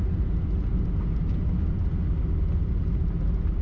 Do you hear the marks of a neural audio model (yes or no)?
no